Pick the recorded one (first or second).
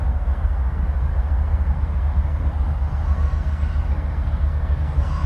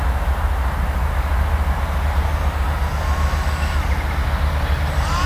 second